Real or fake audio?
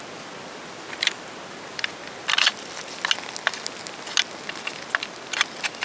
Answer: real